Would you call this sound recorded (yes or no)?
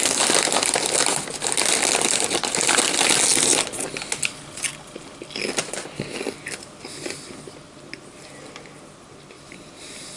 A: yes